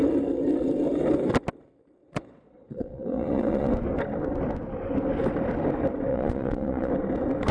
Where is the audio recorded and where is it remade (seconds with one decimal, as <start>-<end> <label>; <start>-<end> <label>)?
0.0-2.0 recorded; 2.0-3.7 remade; 3.7-6.1 recorded; 6.1-6.9 remade; 6.9-7.5 recorded